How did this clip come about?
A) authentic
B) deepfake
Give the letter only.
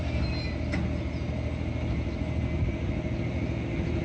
A